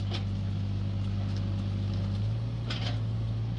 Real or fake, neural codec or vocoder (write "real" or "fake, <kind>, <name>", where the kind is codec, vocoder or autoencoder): real